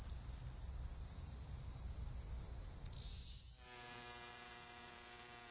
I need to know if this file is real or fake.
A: real